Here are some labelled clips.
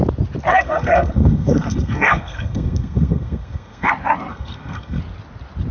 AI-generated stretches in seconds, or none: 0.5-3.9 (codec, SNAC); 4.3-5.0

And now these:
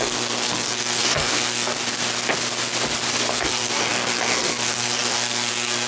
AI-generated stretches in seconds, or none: 0.0-1.7 (codec, SNAC); 3.3-5.9

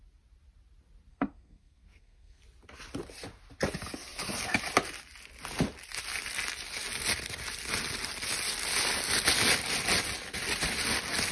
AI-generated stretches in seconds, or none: 1.1-2.4 (codec, SNAC)

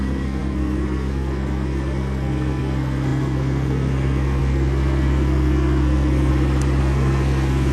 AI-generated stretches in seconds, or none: 0.0-6.3 (codec, SNAC); 6.8-7.7